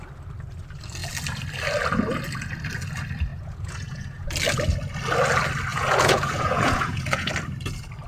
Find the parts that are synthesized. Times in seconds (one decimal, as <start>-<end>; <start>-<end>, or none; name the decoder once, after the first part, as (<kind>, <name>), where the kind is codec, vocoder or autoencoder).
3.3-4.3 (vocoder, Vocos); 5.7-7.3